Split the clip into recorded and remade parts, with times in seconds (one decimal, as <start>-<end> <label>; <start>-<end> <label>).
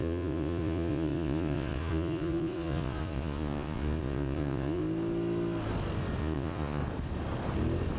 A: 0.0-4.8 remade; 4.8-6.2 recorded; 6.2-6.8 remade; 6.8-8.0 recorded